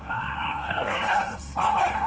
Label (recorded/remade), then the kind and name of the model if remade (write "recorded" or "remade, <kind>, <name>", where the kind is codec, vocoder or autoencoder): remade, codec, SNAC